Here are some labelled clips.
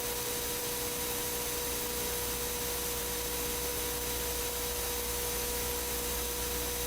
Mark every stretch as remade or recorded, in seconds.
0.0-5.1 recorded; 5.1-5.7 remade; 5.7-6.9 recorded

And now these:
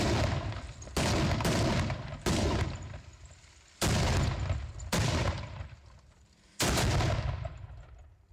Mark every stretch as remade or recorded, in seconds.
0.0-8.3 recorded

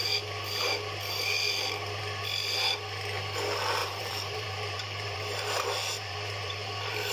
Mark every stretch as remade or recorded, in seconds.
0.0-3.8 recorded; 3.8-7.1 remade

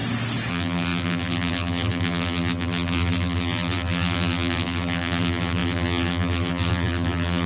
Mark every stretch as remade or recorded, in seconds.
0.0-0.5 recorded; 0.5-7.5 remade

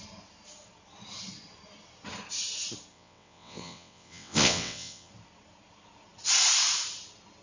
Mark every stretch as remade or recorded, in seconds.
0.0-2.9 recorded; 2.9-5.1 remade; 5.1-7.4 recorded